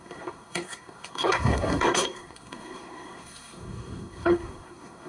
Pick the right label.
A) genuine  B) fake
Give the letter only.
B